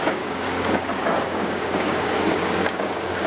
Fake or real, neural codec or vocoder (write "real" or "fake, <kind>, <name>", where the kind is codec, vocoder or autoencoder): fake, codec, DAC